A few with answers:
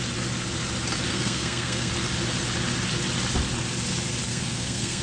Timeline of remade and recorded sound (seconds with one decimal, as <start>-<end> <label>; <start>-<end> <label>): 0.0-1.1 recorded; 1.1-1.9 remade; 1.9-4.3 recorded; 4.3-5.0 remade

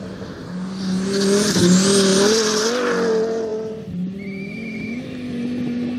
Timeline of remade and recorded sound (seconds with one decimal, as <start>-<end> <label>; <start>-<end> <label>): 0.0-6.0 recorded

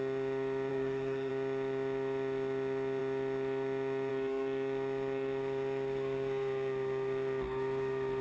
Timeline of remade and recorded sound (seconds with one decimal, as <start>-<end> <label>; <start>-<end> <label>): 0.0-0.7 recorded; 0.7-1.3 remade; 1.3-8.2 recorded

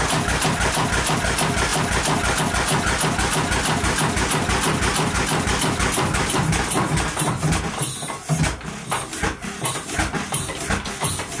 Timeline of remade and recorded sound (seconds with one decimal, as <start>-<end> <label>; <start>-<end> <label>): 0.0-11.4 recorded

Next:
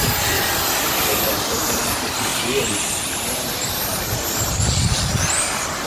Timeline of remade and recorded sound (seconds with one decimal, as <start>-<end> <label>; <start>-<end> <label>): 0.0-5.9 recorded